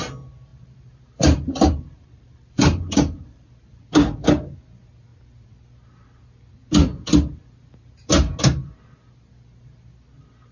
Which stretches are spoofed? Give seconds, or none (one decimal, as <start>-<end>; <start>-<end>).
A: 0.5-3.8